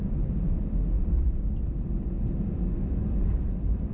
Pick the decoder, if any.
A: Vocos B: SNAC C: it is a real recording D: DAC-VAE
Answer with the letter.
C